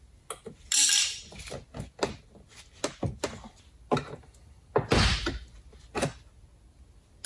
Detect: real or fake real